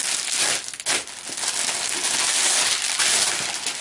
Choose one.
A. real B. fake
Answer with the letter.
A